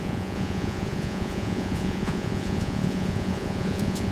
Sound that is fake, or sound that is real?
fake